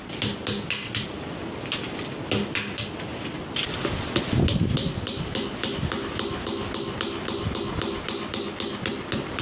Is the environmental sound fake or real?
real